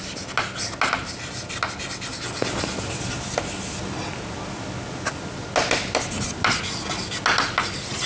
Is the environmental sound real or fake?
real